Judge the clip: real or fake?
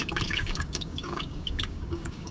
fake